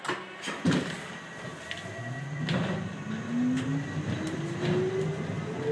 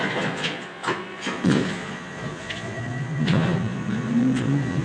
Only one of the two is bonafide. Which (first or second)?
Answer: first